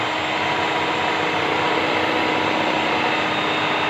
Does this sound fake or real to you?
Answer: real